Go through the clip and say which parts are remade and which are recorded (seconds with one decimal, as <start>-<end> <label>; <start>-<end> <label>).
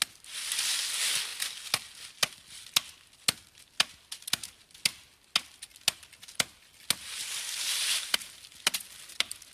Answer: 0.0-9.5 recorded